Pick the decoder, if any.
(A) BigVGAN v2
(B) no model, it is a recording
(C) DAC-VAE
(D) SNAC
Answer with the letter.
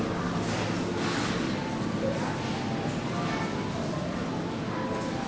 B